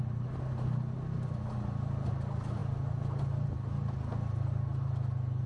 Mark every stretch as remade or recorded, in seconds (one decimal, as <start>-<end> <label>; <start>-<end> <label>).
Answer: 0.0-5.5 recorded